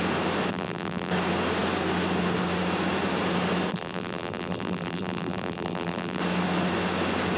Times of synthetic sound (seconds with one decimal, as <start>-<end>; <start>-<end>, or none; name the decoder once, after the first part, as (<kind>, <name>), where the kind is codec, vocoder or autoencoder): 0.5-1.1 (vocoder, BigVGAN v2); 3.7-6.2